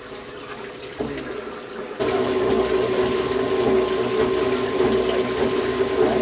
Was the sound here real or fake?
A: real